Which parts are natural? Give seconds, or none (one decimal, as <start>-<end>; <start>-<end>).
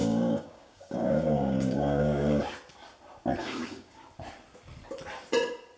2.4-3.4; 4.0-5.8